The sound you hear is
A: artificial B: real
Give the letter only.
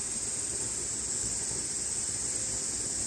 B